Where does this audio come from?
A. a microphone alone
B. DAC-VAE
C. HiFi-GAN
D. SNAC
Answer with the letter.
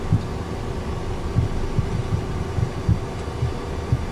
A